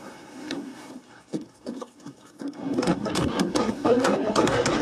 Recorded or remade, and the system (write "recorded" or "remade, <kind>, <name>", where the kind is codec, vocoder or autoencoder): remade, codec, SNAC